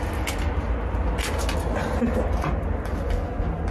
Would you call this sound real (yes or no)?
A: yes